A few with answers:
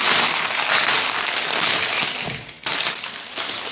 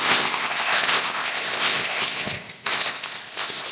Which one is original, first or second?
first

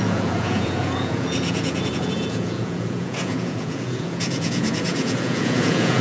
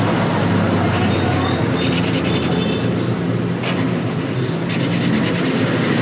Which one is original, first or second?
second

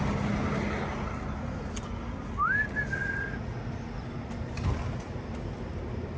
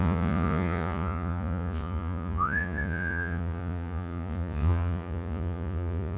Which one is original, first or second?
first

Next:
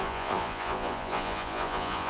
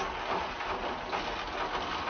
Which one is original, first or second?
second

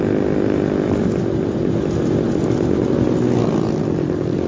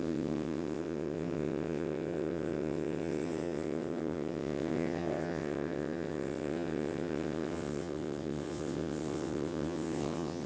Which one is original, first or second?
first